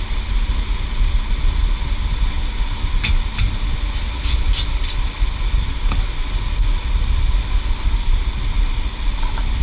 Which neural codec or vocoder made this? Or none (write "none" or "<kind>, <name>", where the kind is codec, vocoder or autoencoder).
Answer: none